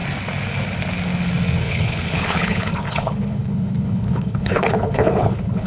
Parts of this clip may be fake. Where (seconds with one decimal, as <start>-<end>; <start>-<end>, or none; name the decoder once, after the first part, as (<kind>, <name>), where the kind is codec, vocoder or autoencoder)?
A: 1.6-5.7 (codec, HILCodec)